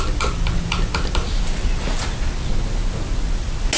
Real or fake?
real